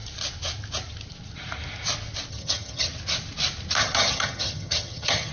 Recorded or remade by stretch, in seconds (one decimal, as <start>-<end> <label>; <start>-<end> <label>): 0.0-2.3 recorded; 2.3-2.9 remade; 2.9-3.8 recorded; 3.8-5.3 remade